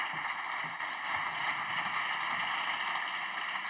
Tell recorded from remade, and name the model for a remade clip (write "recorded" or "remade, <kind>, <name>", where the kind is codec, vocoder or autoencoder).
recorded